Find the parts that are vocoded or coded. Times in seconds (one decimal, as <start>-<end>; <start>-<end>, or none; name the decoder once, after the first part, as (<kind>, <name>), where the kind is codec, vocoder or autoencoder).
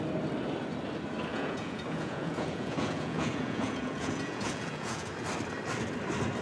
1.3-5.1 (vocoder, Vocos)